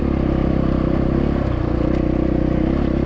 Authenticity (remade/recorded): recorded